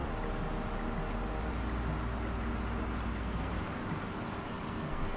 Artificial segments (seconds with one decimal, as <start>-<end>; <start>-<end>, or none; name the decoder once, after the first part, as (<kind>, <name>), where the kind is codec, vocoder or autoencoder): 3.1-3.5 (codec, SNAC); 4.7-5.2